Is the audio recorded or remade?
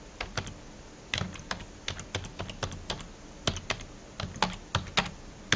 recorded